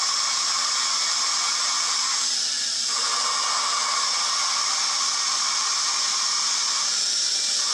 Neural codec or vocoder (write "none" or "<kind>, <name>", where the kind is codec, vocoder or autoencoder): none